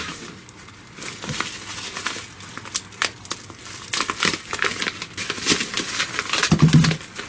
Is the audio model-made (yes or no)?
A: no